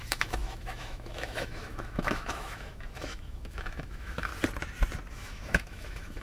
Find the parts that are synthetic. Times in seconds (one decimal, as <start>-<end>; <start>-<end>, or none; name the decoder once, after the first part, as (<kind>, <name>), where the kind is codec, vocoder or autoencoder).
0.0-4.3 (autoencoder, DAC-VAE); 5.1-6.2